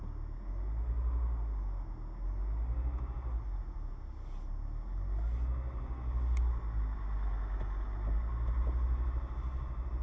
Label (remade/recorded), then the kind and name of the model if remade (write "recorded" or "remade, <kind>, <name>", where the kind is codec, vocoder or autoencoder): recorded